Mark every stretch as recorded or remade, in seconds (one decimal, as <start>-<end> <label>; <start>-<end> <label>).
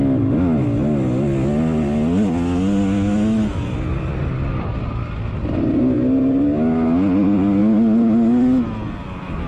0.0-9.5 recorded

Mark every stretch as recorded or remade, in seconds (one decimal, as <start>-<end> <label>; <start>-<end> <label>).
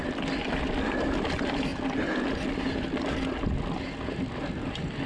0.0-1.7 remade; 1.7-4.6 recorded; 4.6-5.1 remade